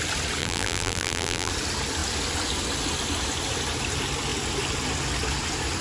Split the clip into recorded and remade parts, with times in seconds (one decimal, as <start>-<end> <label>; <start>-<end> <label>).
0.0-0.4 recorded; 0.4-1.5 remade; 1.5-5.8 recorded